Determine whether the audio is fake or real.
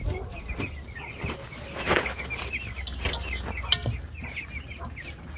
real